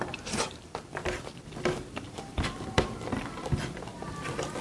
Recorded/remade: remade